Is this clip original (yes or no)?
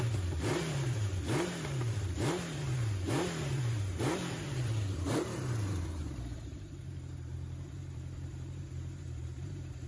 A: no